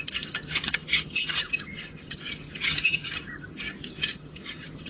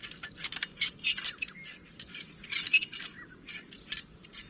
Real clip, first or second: second